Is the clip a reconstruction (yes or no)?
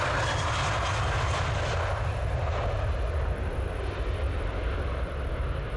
no